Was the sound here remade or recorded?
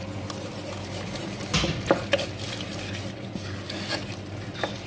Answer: recorded